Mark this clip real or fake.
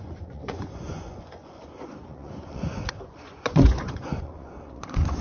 fake